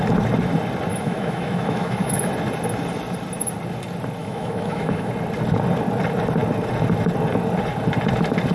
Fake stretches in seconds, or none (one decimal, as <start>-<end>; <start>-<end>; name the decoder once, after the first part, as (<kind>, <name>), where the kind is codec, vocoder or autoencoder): 0.9-2.3 (autoencoder, DAC-VAE); 4.2-5.1